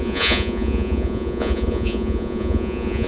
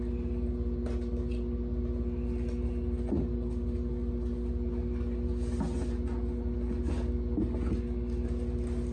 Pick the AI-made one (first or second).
first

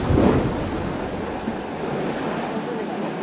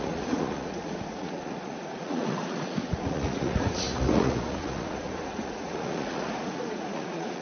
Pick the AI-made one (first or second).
second